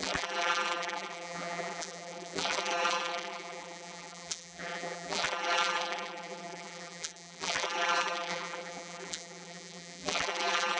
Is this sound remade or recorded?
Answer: remade